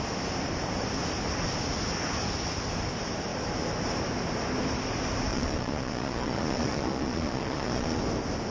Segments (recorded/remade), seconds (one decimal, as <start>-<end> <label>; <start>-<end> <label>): 0.0-5.3 recorded; 5.3-8.0 remade; 8.0-8.5 recorded